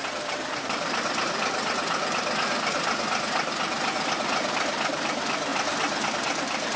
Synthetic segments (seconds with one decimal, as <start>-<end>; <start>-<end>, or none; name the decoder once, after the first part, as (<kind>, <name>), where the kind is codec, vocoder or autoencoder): none